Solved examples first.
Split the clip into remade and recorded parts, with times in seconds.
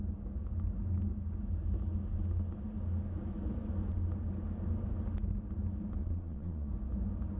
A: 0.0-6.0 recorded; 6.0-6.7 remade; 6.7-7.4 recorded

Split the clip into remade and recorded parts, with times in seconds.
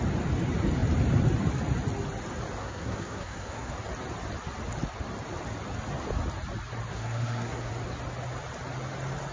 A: 0.0-2.6 recorded; 2.6-3.7 remade; 3.7-6.9 recorded; 6.9-7.7 remade; 7.7-9.3 recorded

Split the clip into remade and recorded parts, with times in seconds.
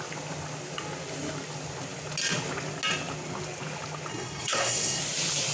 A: 0.0-4.1 recorded; 4.1-5.0 remade; 5.0-5.5 recorded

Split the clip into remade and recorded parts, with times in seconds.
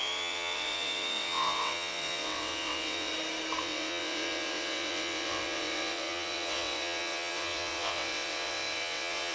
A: 0.0-3.1 remade; 3.1-3.6 recorded; 3.6-9.3 remade